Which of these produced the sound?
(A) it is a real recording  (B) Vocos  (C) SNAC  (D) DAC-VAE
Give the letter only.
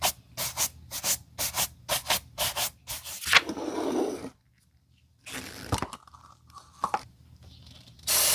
A